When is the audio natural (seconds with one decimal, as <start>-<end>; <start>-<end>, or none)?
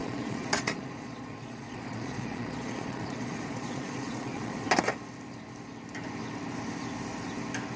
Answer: 4.7-7.8